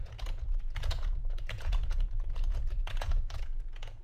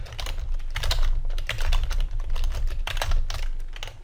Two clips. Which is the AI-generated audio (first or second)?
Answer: first